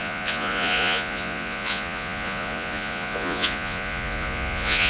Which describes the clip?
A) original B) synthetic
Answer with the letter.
B